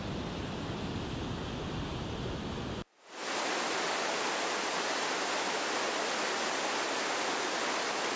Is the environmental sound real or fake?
real